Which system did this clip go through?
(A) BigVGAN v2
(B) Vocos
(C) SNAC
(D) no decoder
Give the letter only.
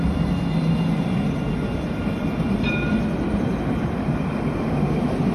D